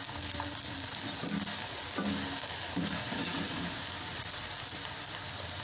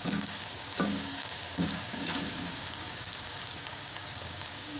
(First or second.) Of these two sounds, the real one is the first